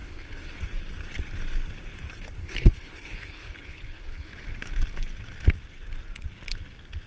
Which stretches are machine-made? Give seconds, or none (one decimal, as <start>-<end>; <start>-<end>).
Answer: 0.0-0.6; 2.4-4.3